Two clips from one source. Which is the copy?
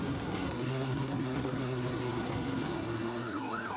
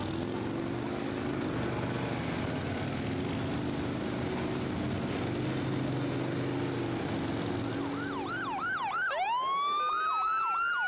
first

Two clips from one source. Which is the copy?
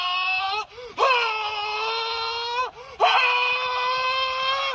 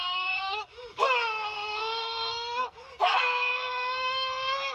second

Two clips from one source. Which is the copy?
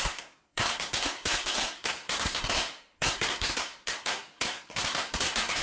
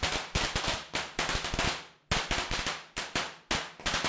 first